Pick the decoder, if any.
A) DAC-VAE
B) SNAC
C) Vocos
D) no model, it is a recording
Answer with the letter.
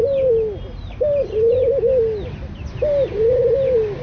D